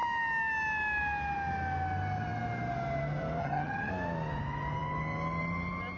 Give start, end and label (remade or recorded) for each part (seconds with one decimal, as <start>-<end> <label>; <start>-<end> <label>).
0.0-3.4 recorded; 3.4-3.9 remade; 3.9-6.0 recorded